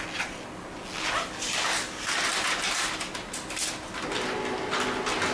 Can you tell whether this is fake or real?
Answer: real